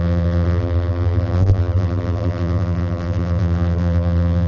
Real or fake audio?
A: fake